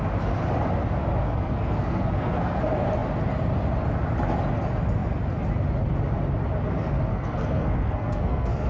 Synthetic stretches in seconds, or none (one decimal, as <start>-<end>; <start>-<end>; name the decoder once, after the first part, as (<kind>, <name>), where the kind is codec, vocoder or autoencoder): 1.2-2.6 (codec, SNAC); 7.1-8.7